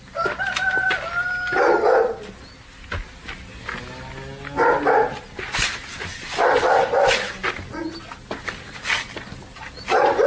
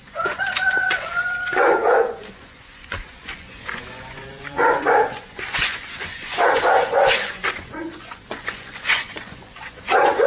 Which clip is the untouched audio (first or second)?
first